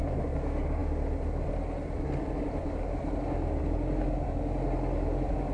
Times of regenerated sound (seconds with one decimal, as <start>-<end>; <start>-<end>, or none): none